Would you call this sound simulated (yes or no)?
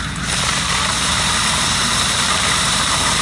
yes